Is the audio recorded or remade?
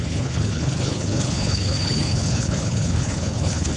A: remade